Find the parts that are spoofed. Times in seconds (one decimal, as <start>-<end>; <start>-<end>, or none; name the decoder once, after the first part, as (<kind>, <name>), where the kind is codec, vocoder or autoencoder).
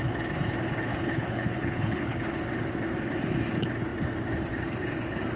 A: 0.9-2.2 (codec, HILCodec)